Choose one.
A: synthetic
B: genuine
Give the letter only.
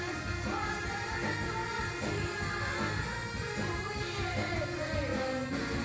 B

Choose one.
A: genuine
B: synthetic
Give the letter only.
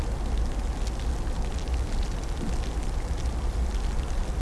A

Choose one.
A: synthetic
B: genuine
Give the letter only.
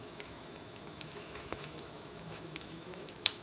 A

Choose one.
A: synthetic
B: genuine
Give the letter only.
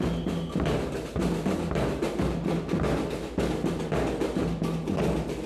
B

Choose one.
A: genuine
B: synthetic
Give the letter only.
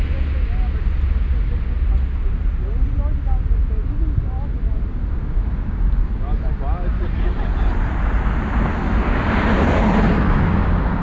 A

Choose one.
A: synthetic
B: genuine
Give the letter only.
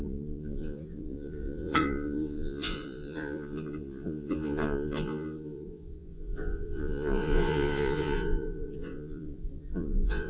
A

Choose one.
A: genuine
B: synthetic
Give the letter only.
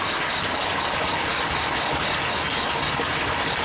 A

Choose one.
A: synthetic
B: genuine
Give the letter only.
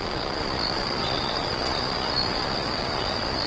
A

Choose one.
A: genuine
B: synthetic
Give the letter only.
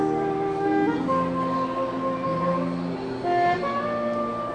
A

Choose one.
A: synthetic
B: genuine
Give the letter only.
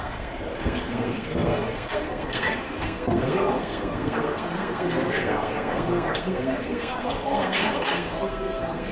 A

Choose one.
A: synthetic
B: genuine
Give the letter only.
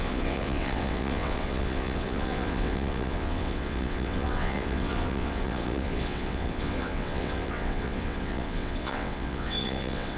A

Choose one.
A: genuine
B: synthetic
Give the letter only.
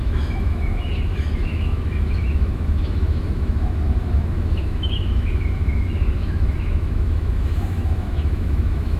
B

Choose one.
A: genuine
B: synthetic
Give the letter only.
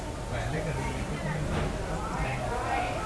A